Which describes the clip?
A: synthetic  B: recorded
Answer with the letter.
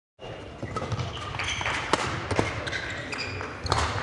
B